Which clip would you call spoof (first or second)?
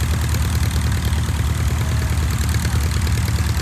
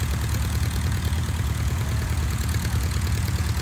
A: second